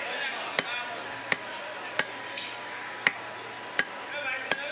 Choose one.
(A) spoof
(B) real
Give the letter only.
B